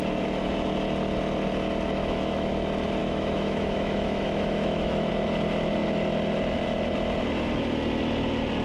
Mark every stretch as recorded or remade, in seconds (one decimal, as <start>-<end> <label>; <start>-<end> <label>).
0.0-2.0 recorded; 2.0-2.5 remade; 2.5-3.0 recorded; 3.0-5.1 remade; 5.1-8.6 recorded